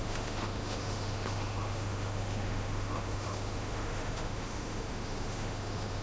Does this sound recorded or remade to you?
remade